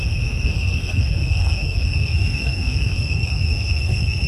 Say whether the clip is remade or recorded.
remade